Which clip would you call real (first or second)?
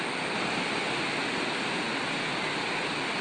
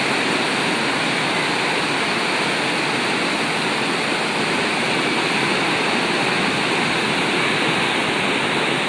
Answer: second